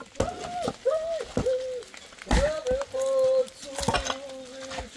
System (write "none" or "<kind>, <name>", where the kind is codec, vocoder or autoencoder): none